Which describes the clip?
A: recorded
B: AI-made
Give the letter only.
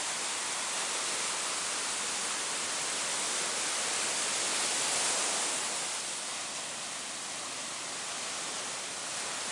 A